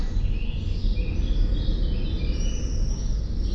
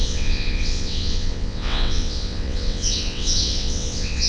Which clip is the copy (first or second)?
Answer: second